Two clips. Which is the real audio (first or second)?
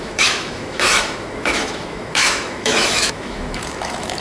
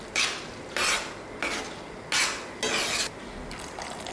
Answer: second